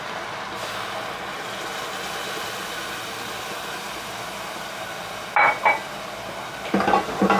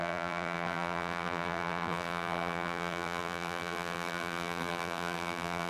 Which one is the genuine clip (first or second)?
first